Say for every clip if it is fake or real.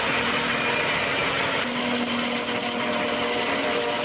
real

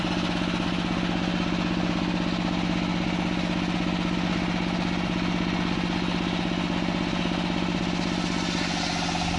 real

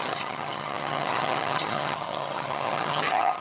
fake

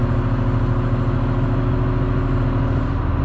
real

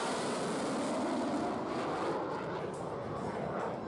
real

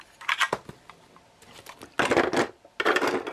real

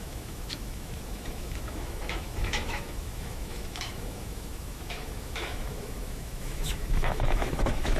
fake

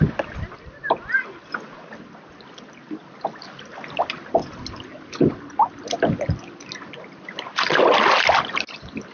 real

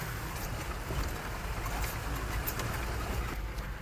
real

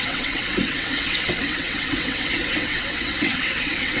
fake